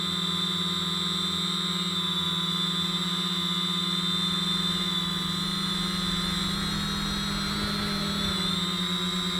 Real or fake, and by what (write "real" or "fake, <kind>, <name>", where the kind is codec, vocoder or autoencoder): real